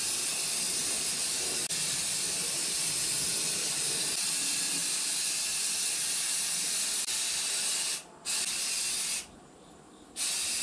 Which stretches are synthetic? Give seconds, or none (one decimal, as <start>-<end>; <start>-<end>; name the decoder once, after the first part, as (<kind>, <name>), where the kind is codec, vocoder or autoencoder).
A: none